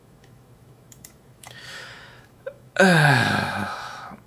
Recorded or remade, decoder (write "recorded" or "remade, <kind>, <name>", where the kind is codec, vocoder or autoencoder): remade, autoencoder, DAC-VAE